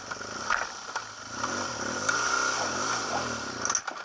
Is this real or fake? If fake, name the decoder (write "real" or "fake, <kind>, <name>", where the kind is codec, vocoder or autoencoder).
real